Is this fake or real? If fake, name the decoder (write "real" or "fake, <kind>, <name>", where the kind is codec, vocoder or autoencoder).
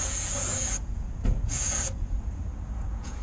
fake, vocoder, Vocos